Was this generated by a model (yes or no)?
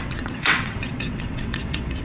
yes